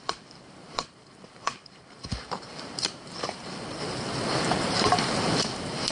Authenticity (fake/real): fake